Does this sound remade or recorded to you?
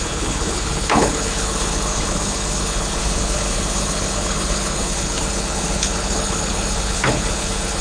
remade